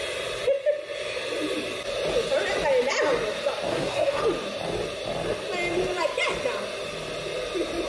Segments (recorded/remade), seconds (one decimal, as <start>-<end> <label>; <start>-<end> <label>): 0.0-3.7 recorded; 3.7-4.2 remade; 4.2-7.9 recorded